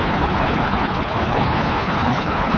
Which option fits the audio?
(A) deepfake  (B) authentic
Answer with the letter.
A